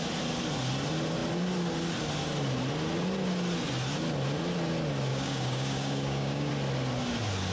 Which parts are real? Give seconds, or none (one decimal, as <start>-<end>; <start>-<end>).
0.0-5.1; 6.5-7.5